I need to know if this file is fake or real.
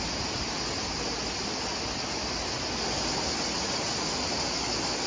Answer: real